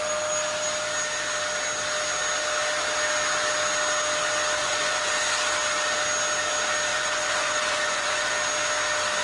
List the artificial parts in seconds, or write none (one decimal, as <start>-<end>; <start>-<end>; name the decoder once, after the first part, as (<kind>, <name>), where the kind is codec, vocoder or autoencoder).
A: 4.6-5.1 (vocoder, Vocos); 6.9-8.3